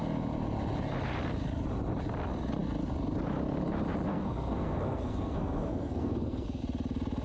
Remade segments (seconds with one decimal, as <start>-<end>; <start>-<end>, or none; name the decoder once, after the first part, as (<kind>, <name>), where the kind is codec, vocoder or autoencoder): 4.1-6.6 (codec, SNAC)